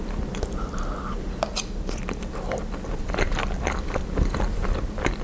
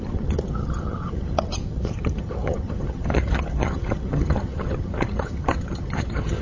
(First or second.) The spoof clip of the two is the second